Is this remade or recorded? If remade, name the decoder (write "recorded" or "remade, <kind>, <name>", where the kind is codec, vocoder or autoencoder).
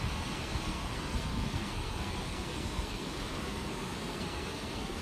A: remade, codec, SNAC